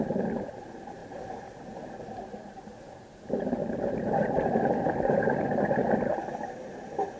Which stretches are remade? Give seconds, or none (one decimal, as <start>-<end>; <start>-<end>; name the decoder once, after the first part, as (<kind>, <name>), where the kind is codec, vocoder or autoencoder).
none